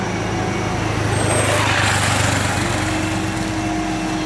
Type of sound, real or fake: real